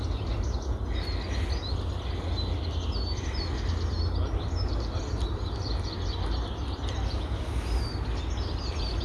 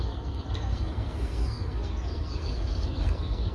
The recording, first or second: first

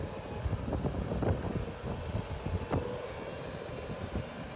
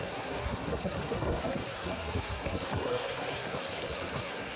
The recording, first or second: first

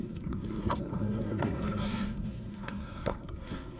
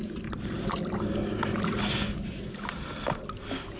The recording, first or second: second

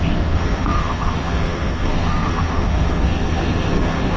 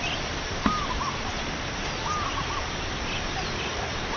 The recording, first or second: second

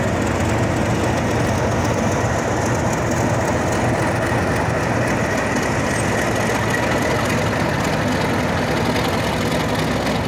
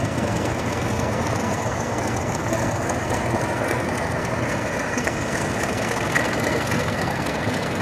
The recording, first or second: first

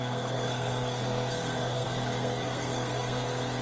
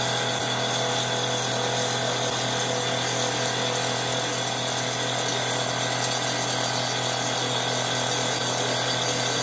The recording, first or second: second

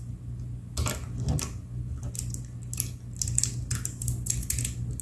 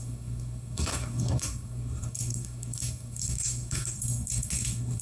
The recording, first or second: first